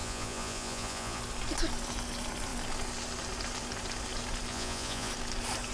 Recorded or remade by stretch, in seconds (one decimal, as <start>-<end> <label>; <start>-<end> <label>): 0.0-1.2 remade; 1.2-4.5 recorded; 4.5-5.1 remade; 5.1-5.7 recorded